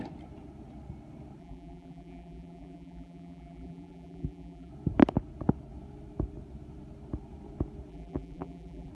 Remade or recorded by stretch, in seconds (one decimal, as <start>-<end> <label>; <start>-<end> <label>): 0.0-1.4 recorded; 1.4-4.7 remade; 4.7-7.9 recorded; 7.9-8.9 remade